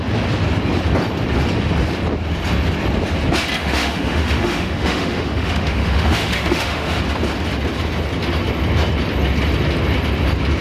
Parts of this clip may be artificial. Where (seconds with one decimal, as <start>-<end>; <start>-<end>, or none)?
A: 3.6-7.0